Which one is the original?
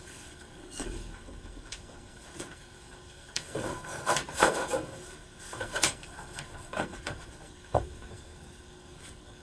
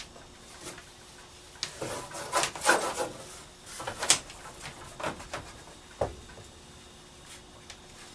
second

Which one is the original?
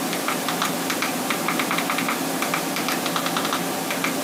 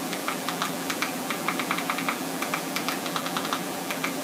first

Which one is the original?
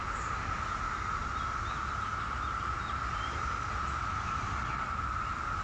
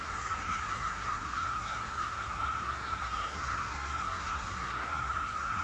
first